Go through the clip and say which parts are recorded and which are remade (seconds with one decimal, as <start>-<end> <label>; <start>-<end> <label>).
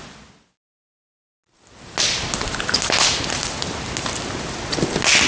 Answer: 0.0-5.3 recorded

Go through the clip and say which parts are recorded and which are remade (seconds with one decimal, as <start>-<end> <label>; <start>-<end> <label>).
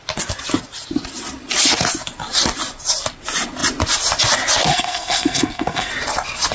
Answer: 0.0-4.7 recorded; 4.7-5.9 remade; 5.9-6.5 recorded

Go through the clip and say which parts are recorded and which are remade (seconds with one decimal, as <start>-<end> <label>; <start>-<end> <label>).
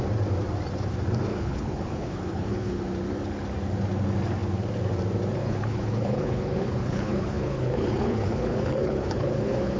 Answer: 0.0-1.3 recorded; 1.3-2.8 remade; 2.8-5.4 recorded; 5.4-9.8 remade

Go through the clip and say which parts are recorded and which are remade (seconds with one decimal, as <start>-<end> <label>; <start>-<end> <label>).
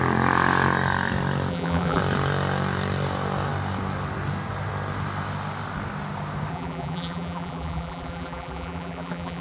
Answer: 0.0-1.5 recorded; 1.5-2.0 remade; 2.0-6.5 recorded; 6.5-9.4 remade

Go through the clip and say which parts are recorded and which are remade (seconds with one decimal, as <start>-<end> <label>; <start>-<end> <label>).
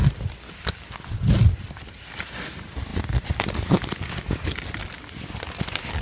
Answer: 0.0-6.0 recorded